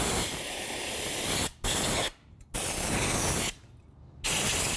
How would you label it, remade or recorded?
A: recorded